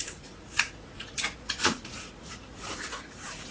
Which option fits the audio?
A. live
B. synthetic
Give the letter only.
B